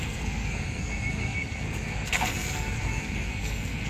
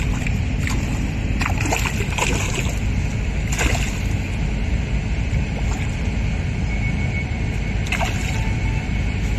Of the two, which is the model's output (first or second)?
first